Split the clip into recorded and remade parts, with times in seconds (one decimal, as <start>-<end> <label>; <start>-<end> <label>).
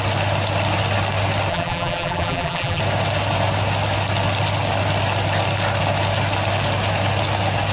0.0-1.5 recorded; 1.5-2.8 remade; 2.8-7.7 recorded